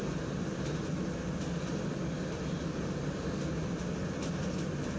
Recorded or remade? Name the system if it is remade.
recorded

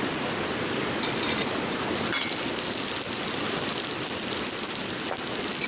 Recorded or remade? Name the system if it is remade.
recorded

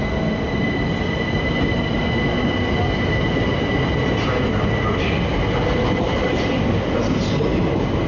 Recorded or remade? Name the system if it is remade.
recorded